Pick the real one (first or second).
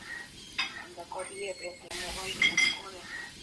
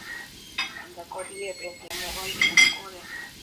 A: second